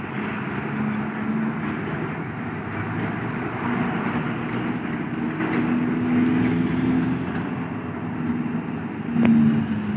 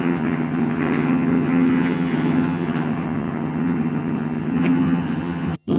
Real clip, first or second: first